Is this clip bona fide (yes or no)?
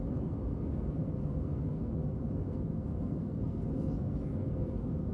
no